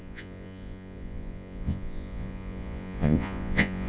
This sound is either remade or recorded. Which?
remade